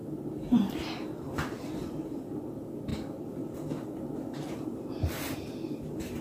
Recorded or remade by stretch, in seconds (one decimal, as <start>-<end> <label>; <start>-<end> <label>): 0.0-2.4 remade; 2.4-2.9 recorded; 2.9-6.2 remade